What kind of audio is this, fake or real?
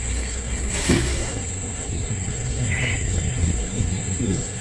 fake